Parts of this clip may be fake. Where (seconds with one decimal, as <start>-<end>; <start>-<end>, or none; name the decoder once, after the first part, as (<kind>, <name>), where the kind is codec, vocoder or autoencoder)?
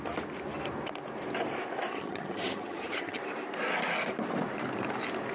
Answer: 1.9-3.2 (vocoder, HiFi-GAN)